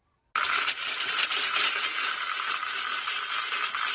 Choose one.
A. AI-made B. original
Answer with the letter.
B